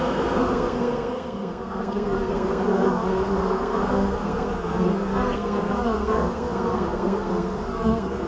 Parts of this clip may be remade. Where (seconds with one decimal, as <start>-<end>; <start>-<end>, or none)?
0.0-8.3